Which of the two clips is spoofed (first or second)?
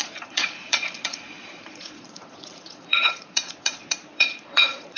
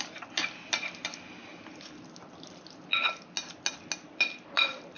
first